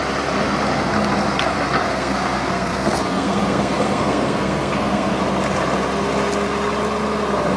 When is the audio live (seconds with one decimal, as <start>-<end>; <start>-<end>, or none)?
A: 0.0-1.8; 5.2-7.6